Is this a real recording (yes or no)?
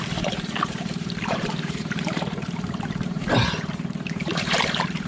no